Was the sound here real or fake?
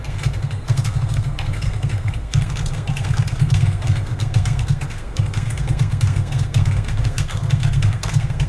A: fake